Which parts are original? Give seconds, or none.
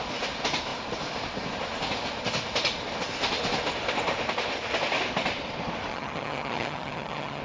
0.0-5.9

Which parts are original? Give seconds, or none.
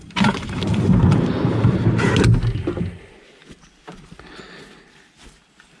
2.1-5.8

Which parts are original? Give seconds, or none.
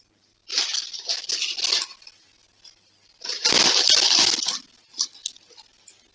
0.0-6.1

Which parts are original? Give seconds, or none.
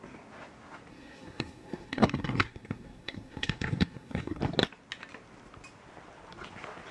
0.0-0.9; 4.4-6.9